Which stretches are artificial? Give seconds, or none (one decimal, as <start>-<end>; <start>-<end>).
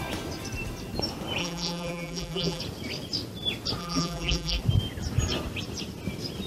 1.4-2.6; 3.8-4.6